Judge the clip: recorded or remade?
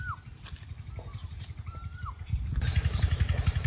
recorded